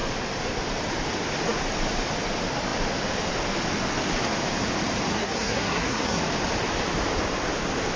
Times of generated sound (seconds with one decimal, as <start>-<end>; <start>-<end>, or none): 5.1-6.2